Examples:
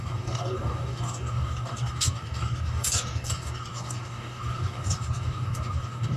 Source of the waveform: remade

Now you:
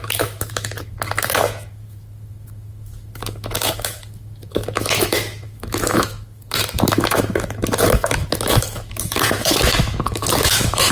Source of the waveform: remade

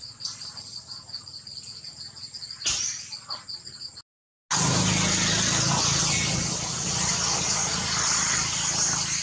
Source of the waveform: recorded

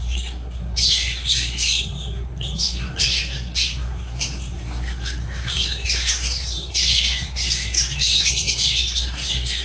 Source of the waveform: remade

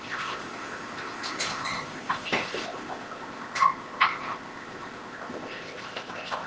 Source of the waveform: remade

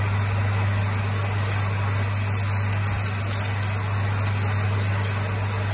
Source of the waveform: recorded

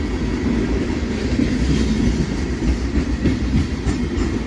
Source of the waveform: recorded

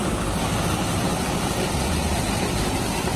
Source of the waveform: recorded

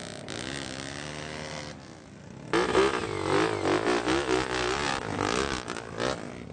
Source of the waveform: recorded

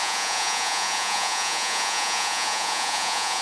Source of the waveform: remade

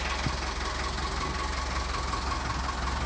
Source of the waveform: recorded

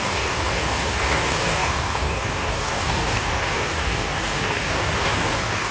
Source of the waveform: remade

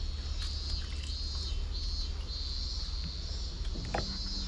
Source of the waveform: recorded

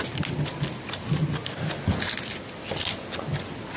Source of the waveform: recorded